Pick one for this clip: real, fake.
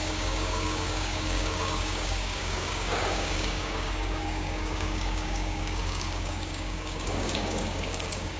fake